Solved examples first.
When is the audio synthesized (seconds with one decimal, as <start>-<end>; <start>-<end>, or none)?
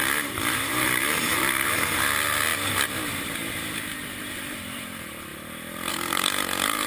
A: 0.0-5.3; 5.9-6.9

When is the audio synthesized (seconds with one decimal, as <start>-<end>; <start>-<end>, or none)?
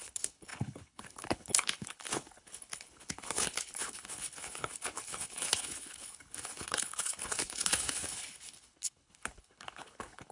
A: 0.0-10.3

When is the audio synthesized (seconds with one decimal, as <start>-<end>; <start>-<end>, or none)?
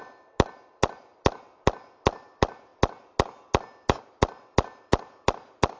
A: none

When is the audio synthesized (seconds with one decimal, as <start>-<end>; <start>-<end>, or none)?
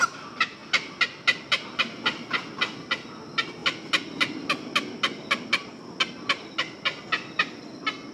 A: none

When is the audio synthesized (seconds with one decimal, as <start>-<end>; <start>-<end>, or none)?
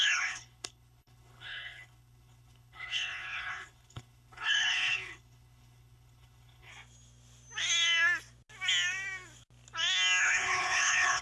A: 0.0-6.7; 10.2-11.2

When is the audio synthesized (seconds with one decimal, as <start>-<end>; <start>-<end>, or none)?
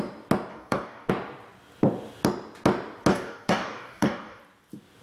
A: 0.5-1.1; 3.1-4.4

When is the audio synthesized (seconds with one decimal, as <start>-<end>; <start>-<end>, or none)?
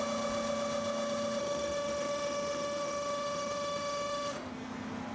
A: 1.4-4.5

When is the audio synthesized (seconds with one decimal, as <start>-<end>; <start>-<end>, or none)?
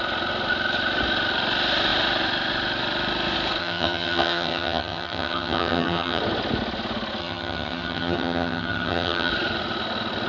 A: 3.6-6.2; 7.2-9.3